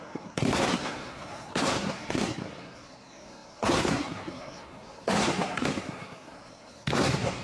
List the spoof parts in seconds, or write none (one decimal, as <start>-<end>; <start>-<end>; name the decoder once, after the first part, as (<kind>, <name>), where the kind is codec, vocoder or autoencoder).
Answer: 0.0-7.4 (codec, SNAC)